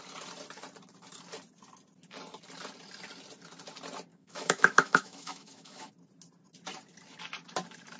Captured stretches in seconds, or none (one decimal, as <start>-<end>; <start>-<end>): 0.0-4.1; 5.9-8.0